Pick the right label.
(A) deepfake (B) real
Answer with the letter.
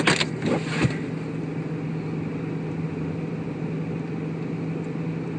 B